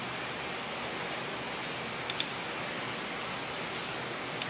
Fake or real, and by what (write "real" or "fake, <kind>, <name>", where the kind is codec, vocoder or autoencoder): real